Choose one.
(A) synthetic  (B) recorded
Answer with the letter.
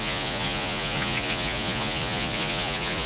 A